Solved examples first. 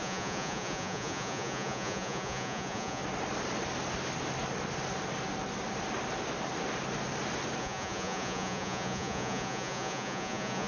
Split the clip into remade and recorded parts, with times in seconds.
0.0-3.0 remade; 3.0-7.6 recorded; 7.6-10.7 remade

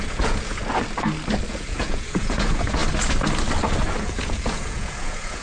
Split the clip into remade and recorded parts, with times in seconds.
0.0-0.6 remade; 0.6-1.5 recorded; 1.5-2.8 remade; 2.8-3.9 recorded; 3.9-5.4 remade

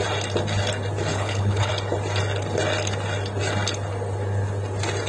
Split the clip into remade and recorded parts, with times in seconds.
0.0-1.1 recorded; 1.1-1.7 remade; 1.7-5.1 recorded

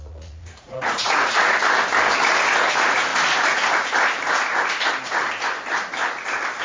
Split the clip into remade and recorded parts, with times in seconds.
0.0-1.6 remade; 1.6-2.6 recorded; 2.6-3.1 remade; 3.1-6.6 recorded

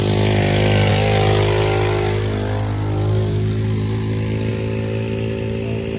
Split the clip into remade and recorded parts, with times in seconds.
0.0-6.0 recorded